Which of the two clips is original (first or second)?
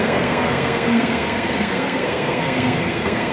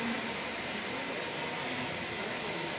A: second